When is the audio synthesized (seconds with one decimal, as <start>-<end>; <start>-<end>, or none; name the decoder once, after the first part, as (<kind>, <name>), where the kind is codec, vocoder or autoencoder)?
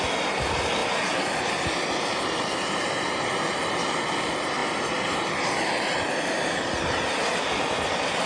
0.8-1.5 (vocoder, BigVGAN v2)